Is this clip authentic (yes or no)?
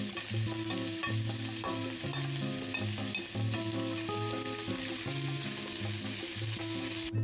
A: yes